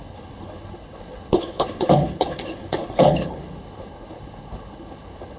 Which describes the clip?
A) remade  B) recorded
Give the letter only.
A